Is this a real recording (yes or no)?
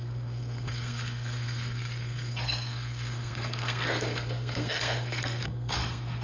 no